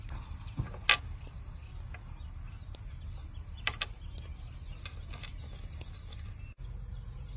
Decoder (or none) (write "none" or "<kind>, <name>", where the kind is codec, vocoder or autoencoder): none